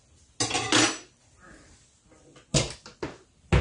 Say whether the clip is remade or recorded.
recorded